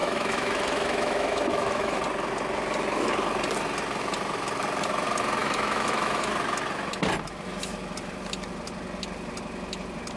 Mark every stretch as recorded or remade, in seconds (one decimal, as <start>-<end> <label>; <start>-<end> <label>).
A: 0.0-2.0 remade; 2.0-5.4 recorded; 5.4-6.3 remade; 6.3-10.2 recorded